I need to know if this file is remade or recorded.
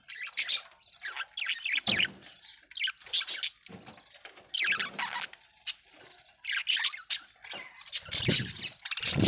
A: recorded